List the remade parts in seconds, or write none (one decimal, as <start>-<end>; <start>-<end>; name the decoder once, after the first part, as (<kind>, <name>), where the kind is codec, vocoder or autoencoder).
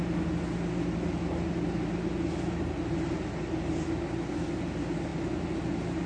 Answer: none